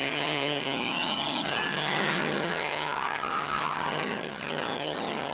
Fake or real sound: fake